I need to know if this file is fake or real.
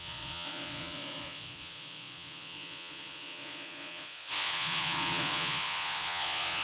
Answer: fake